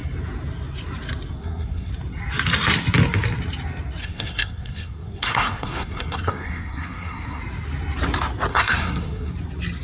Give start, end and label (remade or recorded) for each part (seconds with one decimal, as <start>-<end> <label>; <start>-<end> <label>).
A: 0.0-1.4 recorded; 1.4-1.9 remade; 1.9-4.0 recorded; 4.0-7.4 remade; 7.4-8.5 recorded; 8.5-9.3 remade; 9.3-9.8 recorded